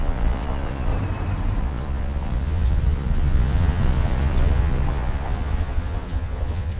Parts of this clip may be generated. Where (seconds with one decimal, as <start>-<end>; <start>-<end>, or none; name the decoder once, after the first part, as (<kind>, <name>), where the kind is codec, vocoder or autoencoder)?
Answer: 0.0-0.9 (vocoder, Vocos); 1.6-6.8